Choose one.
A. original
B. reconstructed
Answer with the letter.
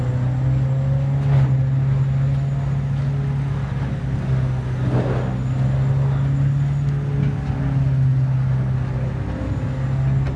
A